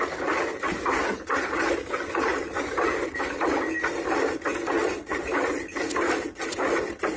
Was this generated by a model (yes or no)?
no